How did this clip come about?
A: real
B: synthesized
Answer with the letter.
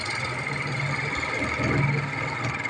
A